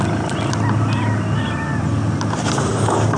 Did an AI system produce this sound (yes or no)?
no